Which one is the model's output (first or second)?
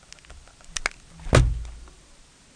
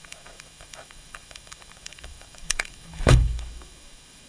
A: second